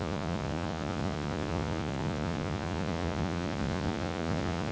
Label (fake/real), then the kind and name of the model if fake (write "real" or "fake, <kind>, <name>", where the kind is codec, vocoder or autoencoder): fake, vocoder, Vocos